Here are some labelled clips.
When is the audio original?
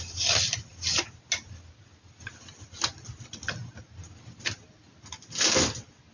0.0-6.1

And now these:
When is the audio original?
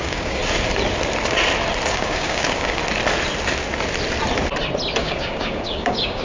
0.4-1.9; 2.8-5.0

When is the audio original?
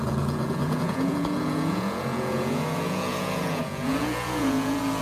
none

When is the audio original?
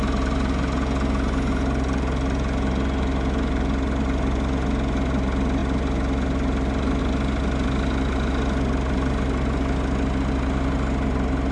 0.0-11.5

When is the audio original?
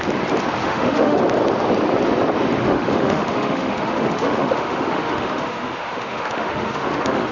0.0-0.6; 1.2-2.6